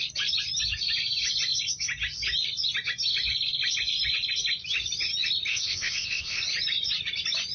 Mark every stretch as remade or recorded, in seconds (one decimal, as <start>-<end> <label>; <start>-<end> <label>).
0.0-5.5 recorded; 5.5-6.4 remade; 6.4-7.5 recorded